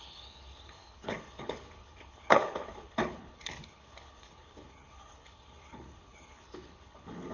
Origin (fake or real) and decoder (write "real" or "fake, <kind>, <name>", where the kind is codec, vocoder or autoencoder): fake, codec, HILCodec